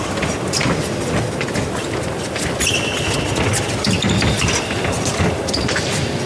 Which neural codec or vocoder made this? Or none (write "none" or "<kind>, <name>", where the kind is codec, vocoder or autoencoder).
none